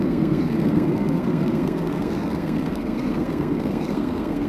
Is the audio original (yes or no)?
no